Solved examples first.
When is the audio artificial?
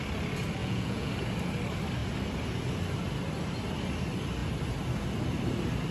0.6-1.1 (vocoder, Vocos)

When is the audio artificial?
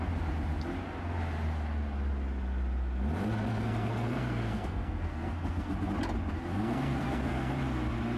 3.5-5.7 (codec, SNAC); 6.5-7.5